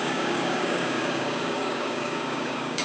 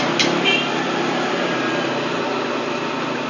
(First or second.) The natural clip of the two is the second